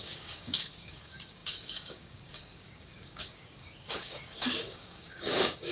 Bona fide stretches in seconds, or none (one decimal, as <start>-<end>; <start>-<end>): none